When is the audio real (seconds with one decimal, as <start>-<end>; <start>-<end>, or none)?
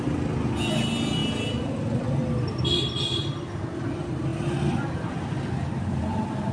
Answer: 0.0-6.5